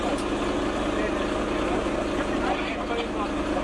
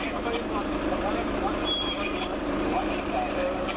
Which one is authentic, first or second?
first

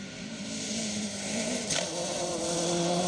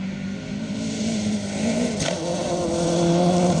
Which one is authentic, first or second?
second